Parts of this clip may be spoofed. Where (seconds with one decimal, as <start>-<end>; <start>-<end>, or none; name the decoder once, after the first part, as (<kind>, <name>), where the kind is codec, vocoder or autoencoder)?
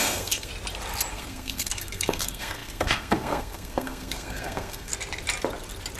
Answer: 0.0-0.5 (codec, SNAC); 1.1-4.9